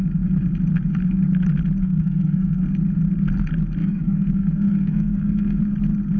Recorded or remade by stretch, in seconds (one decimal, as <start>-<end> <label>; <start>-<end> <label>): 0.0-1.8 recorded; 1.8-2.6 remade; 2.6-3.8 recorded; 3.8-5.6 remade; 5.6-6.2 recorded